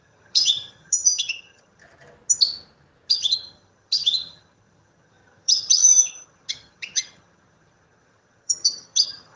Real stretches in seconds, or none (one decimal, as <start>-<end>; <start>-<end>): 1.8-3.1